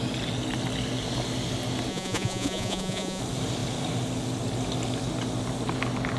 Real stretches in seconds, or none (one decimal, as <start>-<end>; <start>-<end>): 0.0-1.9; 3.2-6.2